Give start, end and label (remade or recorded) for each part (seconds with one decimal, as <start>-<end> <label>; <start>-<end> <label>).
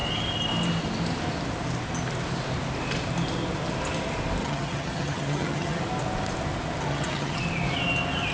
0.0-4.4 recorded; 4.4-5.8 remade; 5.8-6.9 recorded; 6.9-7.4 remade; 7.4-8.3 recorded